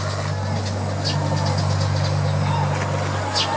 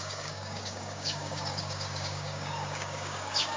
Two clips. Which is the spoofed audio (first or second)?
second